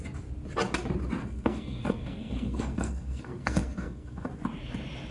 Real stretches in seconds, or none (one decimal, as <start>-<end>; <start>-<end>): 0.0-1.2; 4.3-5.1